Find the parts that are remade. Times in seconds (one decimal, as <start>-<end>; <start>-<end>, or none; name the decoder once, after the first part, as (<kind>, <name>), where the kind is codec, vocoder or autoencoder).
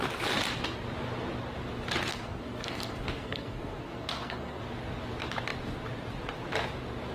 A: 2.1-4.6 (codec, SNAC)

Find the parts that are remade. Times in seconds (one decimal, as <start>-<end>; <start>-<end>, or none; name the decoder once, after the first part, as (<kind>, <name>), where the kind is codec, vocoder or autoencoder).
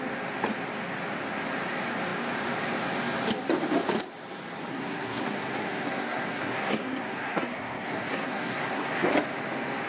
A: 4.7-9.1 (codec, SNAC)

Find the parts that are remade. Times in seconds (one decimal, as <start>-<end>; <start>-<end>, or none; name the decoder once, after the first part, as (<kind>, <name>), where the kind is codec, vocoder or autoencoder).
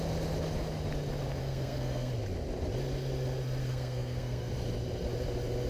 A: 1.4-2.1 (codec, SNAC); 3.6-4.5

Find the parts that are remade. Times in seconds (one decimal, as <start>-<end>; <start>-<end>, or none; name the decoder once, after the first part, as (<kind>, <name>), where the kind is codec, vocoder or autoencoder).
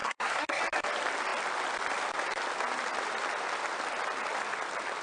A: 0.0-0.6 (codec, SNAC)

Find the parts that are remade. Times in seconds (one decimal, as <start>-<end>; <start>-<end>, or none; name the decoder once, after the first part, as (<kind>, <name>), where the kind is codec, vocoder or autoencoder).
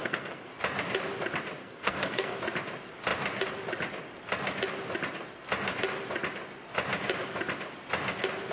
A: 0.0-0.5 (codec, SNAC); 1.6-2.4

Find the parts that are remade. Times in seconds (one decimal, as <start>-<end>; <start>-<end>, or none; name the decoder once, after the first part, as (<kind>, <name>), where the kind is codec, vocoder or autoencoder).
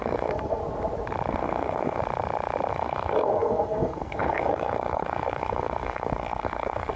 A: 0.0-0.6 (codec, SNAC); 1.3-2.0; 2.7-7.0